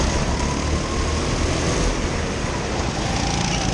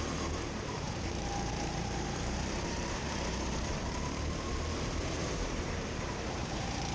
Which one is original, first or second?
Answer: first